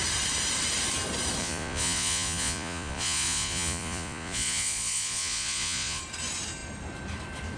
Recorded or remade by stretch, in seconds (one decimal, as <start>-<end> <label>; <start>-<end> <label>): 0.0-1.4 recorded; 1.4-6.0 remade; 6.0-7.6 recorded